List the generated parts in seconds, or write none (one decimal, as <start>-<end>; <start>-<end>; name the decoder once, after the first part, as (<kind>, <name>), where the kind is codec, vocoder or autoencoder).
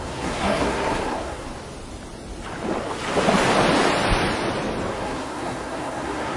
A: 0.0-1.5 (codec, SNAC); 4.9-6.4